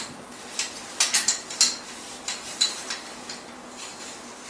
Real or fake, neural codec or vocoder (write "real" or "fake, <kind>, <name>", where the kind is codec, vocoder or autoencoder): real